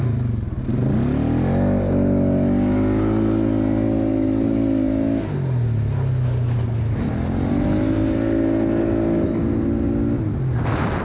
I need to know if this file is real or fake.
real